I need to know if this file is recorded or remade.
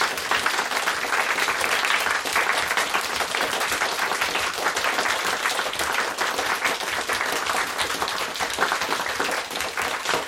recorded